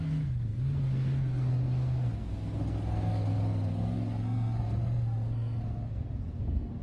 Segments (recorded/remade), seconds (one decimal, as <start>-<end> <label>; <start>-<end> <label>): 0.0-6.8 remade